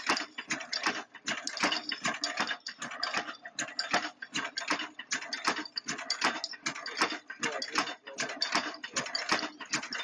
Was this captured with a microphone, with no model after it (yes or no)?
yes